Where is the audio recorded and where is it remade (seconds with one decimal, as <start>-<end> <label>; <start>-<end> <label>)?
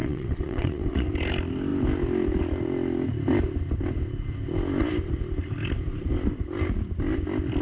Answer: 0.0-1.1 remade; 1.1-7.6 recorded